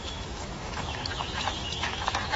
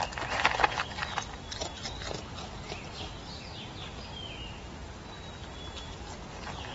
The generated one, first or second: first